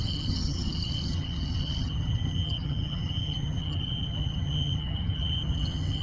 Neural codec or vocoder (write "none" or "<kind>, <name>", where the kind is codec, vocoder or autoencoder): vocoder, HiFi-GAN